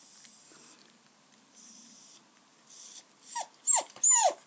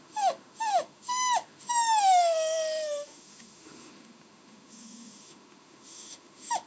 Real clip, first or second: first